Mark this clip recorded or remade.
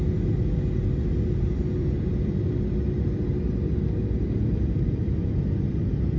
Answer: recorded